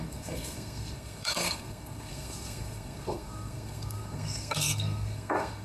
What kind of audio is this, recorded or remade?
remade